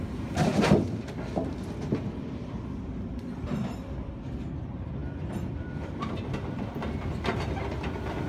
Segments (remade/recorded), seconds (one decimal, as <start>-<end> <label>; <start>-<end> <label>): 0.0-0.5 remade; 0.5-2.1 recorded; 2.1-5.0 remade; 5.0-5.5 recorded; 5.5-8.3 remade